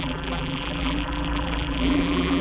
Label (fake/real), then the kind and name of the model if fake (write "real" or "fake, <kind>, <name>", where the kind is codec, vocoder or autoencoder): fake, vocoder, BigVGAN v2